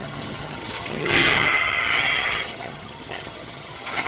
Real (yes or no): no